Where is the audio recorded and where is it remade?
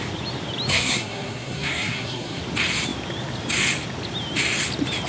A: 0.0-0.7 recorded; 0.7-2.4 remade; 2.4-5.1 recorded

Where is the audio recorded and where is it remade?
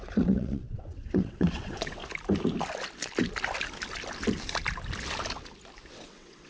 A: 0.0-2.0 remade; 2.0-5.9 recorded; 5.9-6.5 remade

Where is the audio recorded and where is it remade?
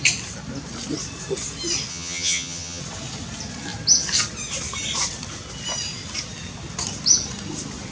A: 0.0-1.9 recorded; 1.9-2.8 remade; 2.8-7.9 recorded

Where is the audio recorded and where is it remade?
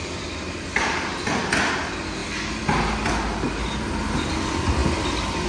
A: 0.0-2.2 recorded; 2.2-3.1 remade; 3.1-4.8 recorded; 4.8-5.5 remade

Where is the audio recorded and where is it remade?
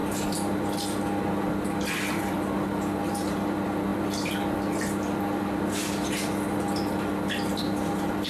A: 0.0-8.3 recorded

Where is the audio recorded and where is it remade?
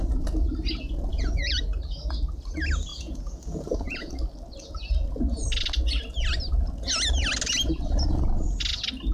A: 0.0-1.1 recorded; 1.1-1.6 remade; 1.6-2.9 recorded; 2.9-4.1 remade; 4.1-9.1 recorded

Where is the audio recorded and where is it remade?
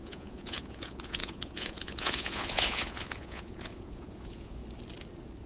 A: 0.0-4.6 remade; 4.6-5.5 recorded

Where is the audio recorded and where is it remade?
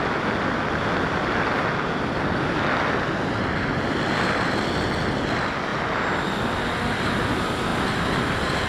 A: 0.0-8.7 recorded